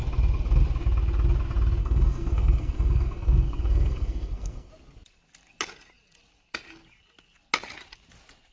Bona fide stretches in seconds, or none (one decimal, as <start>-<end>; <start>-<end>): 0.0-1.8; 4.7-8.5